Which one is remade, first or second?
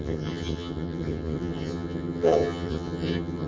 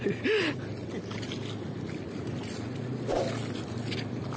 first